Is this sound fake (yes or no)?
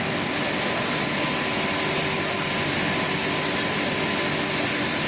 no